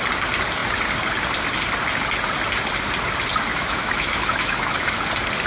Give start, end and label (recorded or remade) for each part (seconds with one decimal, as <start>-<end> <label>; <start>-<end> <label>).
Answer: 0.0-3.5 recorded; 3.5-5.0 remade; 5.0-5.5 recorded